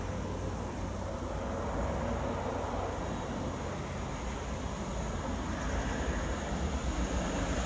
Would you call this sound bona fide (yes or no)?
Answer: yes